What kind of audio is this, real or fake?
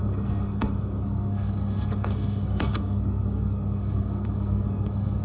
fake